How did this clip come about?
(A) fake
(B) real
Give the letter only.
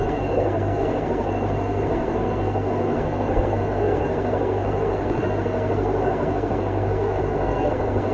A